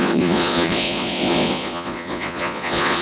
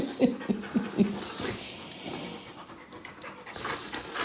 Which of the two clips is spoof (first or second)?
first